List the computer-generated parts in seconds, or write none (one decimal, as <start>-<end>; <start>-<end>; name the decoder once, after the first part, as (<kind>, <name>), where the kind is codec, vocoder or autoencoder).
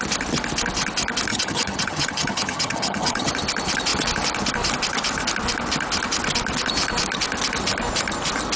1.3-3.3 (vocoder, HiFi-GAN)